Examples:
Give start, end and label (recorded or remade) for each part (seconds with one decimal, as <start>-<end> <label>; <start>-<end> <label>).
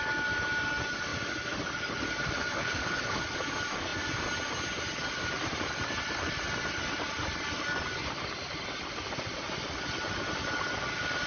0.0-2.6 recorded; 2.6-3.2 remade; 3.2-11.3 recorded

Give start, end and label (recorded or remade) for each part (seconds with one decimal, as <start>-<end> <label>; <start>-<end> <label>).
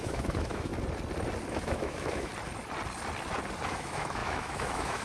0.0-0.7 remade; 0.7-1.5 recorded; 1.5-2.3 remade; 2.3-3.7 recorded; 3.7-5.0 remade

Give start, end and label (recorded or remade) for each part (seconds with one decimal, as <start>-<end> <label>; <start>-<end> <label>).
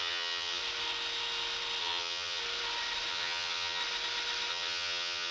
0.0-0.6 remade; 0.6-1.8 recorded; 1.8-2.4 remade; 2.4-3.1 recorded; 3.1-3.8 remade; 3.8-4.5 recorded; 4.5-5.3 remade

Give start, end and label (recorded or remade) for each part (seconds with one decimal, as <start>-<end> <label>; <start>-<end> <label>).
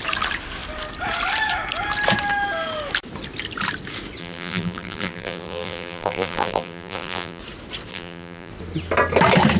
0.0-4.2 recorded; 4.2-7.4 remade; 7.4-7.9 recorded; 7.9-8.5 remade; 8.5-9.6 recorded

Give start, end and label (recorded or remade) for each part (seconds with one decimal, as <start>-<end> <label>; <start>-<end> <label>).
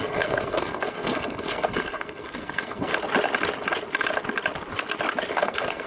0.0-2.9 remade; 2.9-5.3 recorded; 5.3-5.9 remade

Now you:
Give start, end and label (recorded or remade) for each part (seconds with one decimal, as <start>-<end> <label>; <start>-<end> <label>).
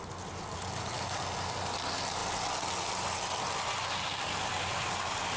0.0-5.4 recorded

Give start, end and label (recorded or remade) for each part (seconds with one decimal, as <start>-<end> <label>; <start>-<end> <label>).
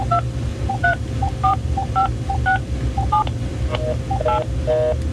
0.0-0.5 recorded; 0.5-3.6 remade; 3.6-5.1 recorded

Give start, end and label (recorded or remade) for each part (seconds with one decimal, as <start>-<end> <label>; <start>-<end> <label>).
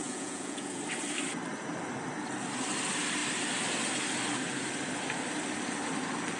0.0-0.8 remade; 0.8-6.4 recorded